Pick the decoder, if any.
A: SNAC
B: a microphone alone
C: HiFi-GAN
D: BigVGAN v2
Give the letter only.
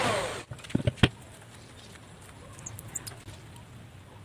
B